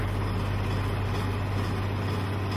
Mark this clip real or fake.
real